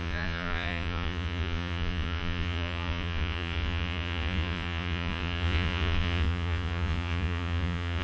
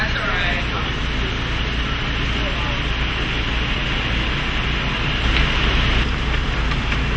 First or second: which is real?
second